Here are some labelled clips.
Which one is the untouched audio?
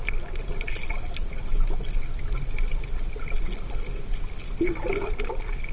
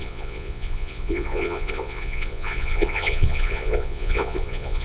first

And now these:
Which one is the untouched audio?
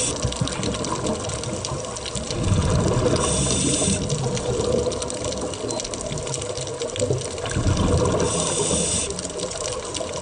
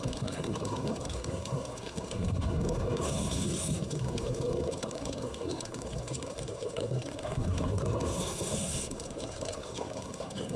first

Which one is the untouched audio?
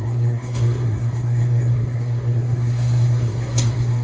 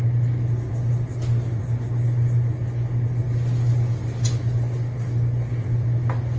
second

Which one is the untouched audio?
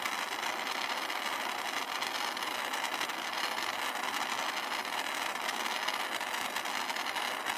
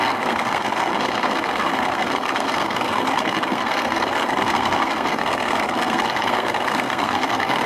first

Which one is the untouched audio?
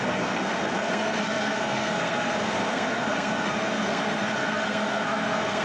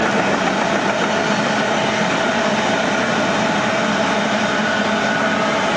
second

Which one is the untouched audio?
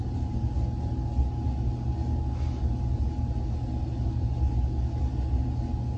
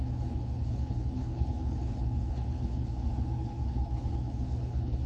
first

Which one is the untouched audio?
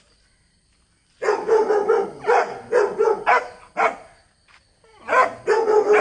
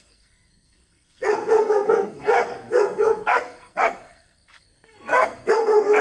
first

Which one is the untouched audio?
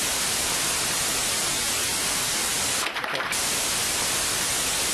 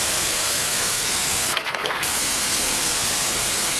first